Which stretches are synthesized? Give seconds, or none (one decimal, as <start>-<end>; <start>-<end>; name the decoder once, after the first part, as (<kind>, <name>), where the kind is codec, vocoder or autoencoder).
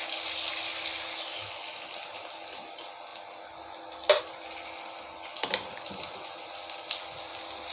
none